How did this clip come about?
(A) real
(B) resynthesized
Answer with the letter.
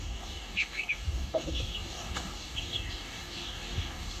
B